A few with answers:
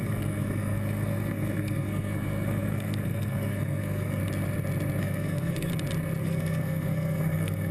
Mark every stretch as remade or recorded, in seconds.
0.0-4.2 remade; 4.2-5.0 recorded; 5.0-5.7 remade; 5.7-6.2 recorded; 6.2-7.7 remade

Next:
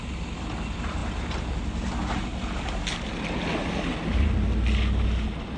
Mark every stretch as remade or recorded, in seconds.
0.0-5.6 recorded

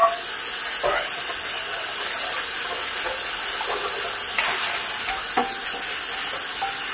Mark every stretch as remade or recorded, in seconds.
0.0-6.9 recorded

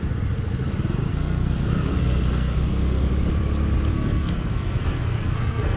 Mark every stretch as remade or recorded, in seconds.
0.0-1.1 recorded; 1.1-3.1 remade; 3.1-3.9 recorded; 3.9-5.8 remade

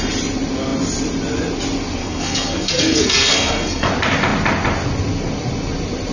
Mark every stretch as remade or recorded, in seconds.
0.0-2.0 recorded; 2.0-3.9 remade; 3.9-6.1 recorded

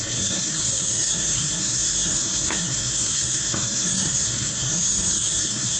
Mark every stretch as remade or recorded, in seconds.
0.0-5.8 remade

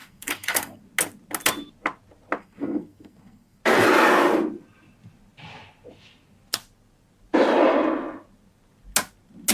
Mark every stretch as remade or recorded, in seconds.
0.0-0.8 remade; 0.8-2.4 recorded; 2.4-3.6 remade; 3.6-9.5 recorded

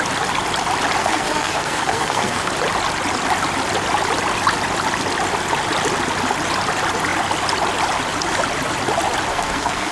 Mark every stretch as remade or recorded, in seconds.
0.0-1.0 recorded; 1.0-2.5 remade; 2.5-9.3 recorded; 9.3-9.9 remade